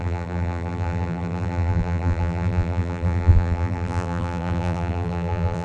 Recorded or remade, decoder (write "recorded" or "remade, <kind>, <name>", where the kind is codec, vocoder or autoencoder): remade, vocoder, BigVGAN v2